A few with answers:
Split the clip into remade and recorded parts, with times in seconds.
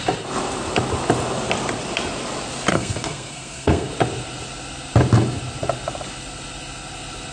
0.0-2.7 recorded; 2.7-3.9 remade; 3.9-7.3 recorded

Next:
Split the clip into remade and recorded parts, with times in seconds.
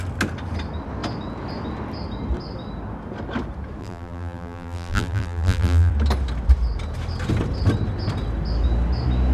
0.0-3.8 recorded; 3.8-5.9 remade; 5.9-9.3 recorded